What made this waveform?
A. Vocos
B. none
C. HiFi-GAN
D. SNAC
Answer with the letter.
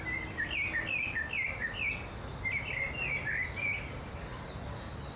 B